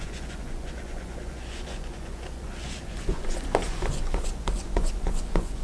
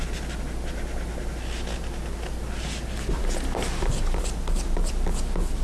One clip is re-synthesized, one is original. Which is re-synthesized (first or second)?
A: first